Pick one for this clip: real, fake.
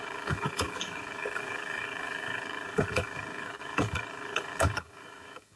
fake